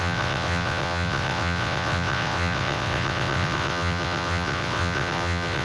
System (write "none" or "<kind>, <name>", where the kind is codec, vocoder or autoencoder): vocoder, WaveNeXt